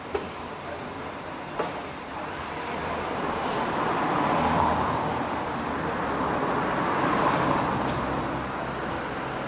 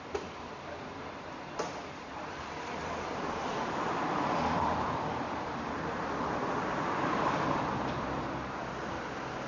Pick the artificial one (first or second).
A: second